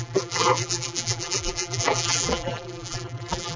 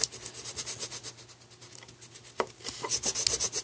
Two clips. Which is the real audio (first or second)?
second